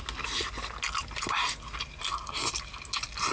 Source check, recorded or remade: recorded